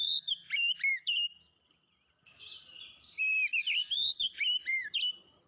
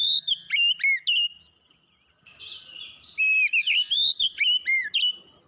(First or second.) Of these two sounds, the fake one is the first